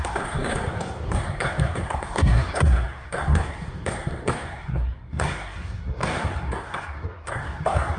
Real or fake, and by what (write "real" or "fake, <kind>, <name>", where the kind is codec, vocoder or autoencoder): fake, codec, SNAC